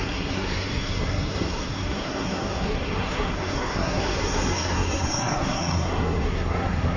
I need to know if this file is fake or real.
fake